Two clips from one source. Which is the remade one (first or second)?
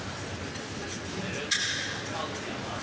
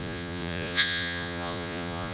second